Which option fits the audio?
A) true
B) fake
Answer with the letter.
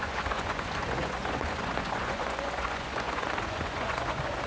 B